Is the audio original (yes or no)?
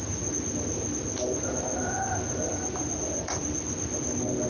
yes